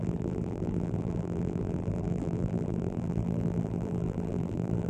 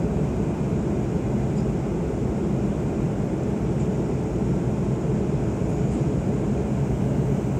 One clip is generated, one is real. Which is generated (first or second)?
first